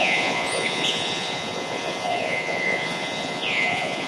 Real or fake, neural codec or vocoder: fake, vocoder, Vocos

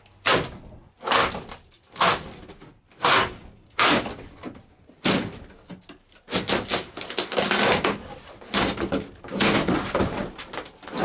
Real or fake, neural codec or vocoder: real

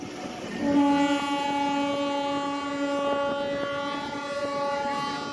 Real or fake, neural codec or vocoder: real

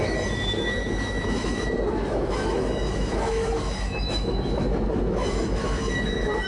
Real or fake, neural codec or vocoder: fake, autoencoder, DAC-VAE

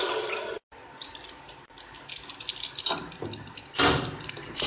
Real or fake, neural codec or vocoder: real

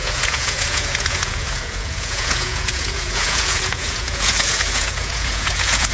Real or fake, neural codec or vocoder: fake, vocoder, Vocos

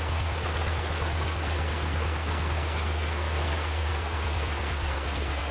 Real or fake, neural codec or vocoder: fake, codec, SNAC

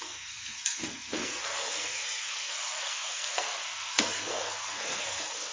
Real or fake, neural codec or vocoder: fake, codec, SNAC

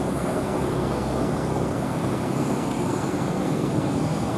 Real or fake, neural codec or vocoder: fake, codec, SNAC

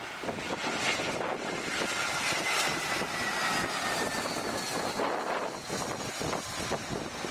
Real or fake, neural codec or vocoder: real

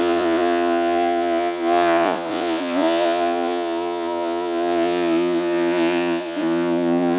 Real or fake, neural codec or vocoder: fake, vocoder, Vocos